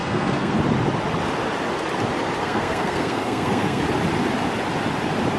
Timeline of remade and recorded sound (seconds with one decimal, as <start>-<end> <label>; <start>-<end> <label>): 0.0-0.6 remade; 0.6-2.4 recorded; 2.4-3.8 remade; 3.8-5.4 recorded

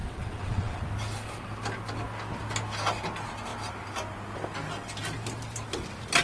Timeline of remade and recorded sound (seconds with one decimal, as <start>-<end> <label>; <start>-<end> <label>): 0.0-0.8 remade; 0.8-6.2 recorded

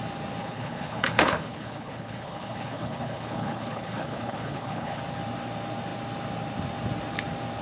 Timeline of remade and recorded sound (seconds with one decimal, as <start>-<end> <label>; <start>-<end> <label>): 0.0-0.4 recorded; 0.4-5.0 remade; 5.0-7.6 recorded

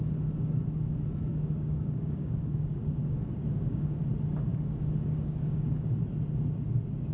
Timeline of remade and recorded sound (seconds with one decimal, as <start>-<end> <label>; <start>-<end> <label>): 0.0-1.3 recorded; 1.3-4.0 remade; 4.0-4.5 recorded; 4.5-6.0 remade; 6.0-7.1 recorded

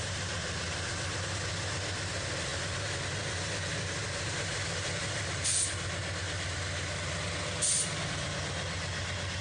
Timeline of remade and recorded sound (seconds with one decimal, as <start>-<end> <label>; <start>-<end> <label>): 0.0-9.4 recorded